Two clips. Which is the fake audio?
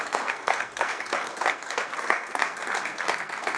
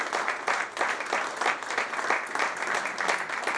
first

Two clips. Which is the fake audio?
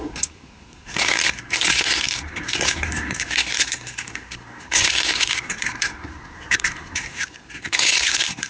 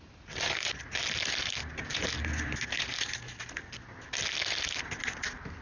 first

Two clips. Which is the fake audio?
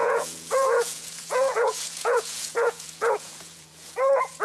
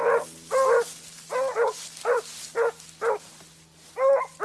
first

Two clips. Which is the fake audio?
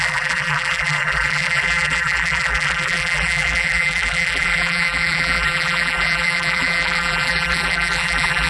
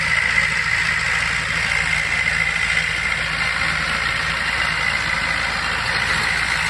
first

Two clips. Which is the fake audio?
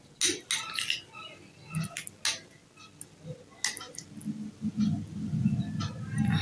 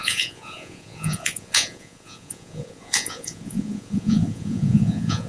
second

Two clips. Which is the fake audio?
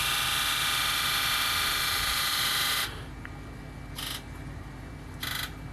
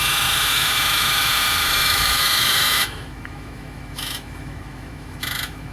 second